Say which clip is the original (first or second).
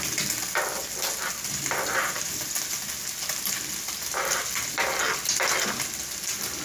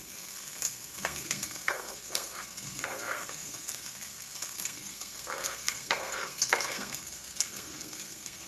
first